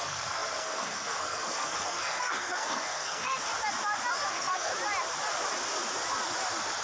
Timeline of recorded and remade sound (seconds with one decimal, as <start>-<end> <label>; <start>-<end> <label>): 0.0-3.5 remade; 3.5-4.3 recorded; 4.3-4.7 remade; 4.7-6.8 recorded